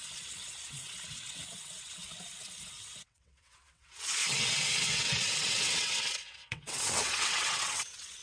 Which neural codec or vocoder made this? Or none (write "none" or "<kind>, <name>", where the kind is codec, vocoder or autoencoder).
vocoder, WaveNeXt